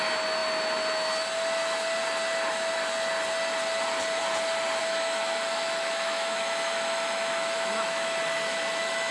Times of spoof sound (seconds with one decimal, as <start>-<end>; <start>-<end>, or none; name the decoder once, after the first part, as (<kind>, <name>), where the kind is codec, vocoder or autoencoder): 4.8-9.1 (autoencoder, DAC-VAE)